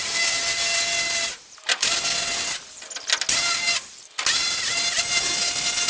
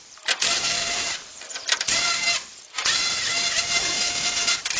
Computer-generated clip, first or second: second